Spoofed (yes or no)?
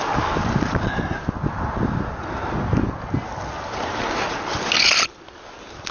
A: no